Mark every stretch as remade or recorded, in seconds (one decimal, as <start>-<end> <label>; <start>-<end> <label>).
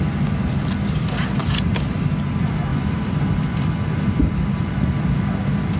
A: 0.0-1.4 recorded; 1.4-2.0 remade; 2.0-2.7 recorded; 2.7-5.8 remade